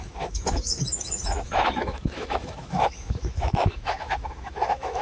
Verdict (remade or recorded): remade